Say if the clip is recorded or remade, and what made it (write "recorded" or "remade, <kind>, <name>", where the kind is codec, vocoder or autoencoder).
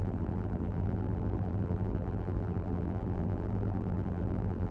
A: remade, vocoder, BigVGAN v2